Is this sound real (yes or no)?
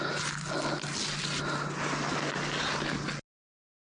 yes